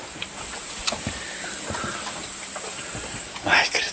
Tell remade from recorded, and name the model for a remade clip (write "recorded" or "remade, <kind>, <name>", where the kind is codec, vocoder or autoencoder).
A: remade, vocoder, BigVGAN v2